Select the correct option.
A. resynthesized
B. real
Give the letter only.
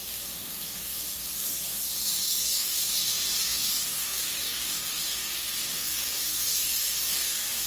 A